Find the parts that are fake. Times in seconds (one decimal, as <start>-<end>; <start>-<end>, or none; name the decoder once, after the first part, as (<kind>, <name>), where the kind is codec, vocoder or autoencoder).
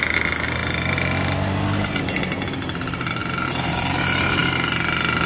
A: none